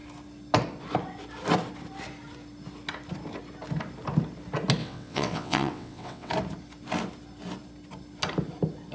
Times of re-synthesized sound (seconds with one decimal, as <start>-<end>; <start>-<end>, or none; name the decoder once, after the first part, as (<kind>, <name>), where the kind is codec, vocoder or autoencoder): 4.8-6.3 (vocoder, WaveNeXt)